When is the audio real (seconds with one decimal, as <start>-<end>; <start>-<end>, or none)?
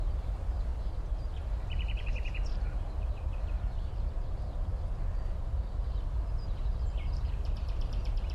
0.7-1.4